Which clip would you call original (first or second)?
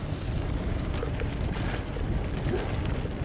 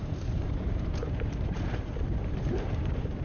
first